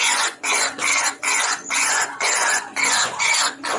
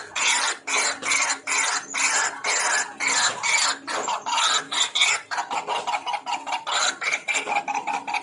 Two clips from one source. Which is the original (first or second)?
second